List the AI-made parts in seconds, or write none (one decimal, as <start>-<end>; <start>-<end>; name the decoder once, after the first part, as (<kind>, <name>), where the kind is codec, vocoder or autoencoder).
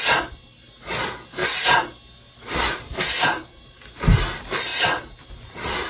none